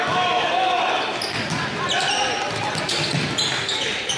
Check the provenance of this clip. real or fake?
real